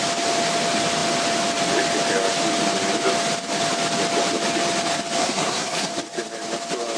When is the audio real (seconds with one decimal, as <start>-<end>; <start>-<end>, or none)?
0.0-5.2; 5.9-7.0